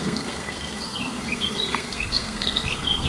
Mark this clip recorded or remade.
remade